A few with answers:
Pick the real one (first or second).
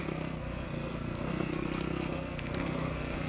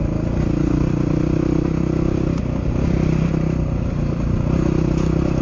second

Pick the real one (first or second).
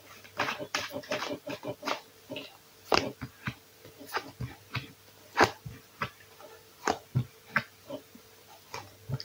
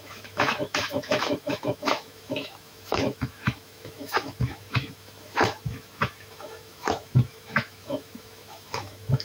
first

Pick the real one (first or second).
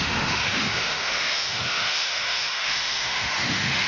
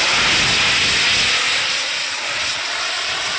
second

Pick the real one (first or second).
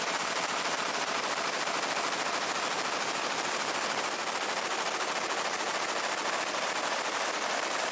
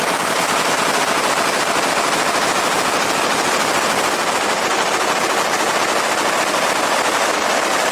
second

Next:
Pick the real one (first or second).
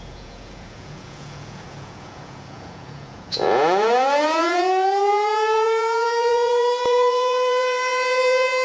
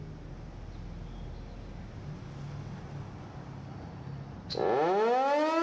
second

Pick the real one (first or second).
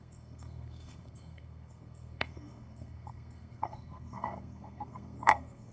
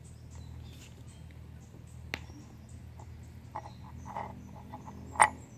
second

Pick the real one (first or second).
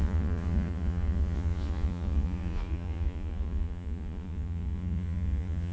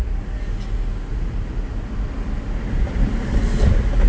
second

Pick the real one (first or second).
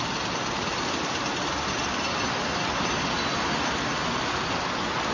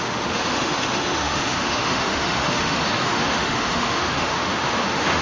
first